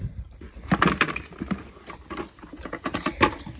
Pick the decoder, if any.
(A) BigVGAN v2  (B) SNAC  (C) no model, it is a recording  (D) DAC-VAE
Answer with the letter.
C